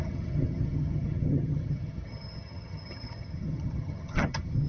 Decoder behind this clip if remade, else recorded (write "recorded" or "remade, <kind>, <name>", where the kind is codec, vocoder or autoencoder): remade, vocoder, HiFi-GAN